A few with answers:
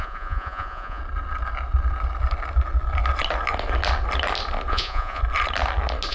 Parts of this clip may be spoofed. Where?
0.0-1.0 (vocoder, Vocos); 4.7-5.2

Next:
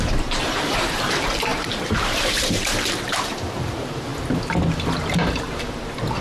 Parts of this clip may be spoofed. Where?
0.0-4.1 (vocoder, BigVGAN v2)

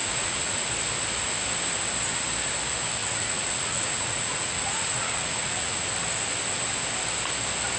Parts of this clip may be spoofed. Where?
0.0-0.7 (vocoder, Vocos); 3.0-5.9